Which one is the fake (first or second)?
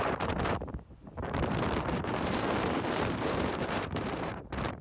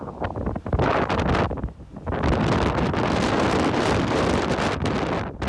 first